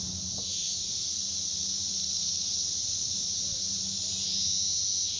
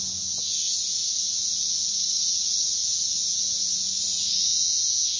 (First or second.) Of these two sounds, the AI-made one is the second